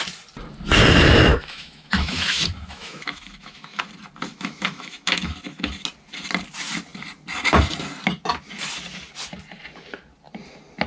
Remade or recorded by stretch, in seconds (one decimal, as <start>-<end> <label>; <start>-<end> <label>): 0.0-1.3 recorded; 1.3-3.8 remade; 3.8-4.3 recorded; 4.3-5.7 remade; 5.7-10.9 recorded